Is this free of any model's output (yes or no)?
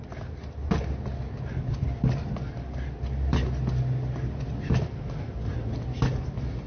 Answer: yes